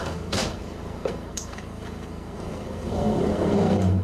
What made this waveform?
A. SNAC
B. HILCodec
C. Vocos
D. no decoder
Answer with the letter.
A